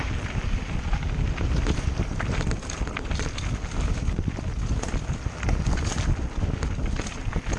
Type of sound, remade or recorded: recorded